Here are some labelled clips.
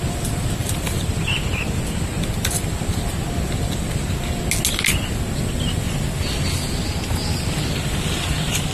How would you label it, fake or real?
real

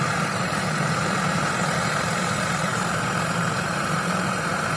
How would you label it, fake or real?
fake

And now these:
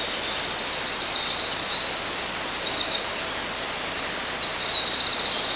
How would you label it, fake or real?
real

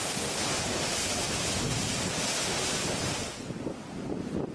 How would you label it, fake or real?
real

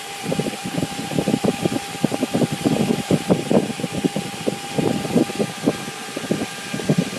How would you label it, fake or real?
real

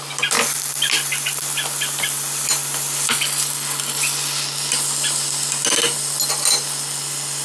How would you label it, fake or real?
real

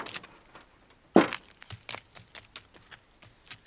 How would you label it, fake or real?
real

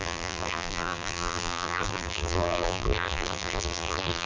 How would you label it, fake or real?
fake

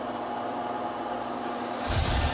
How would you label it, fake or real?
real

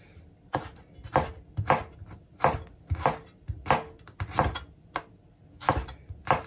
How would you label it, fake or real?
real